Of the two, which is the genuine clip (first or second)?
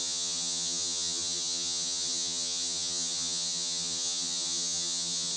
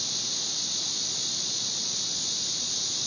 second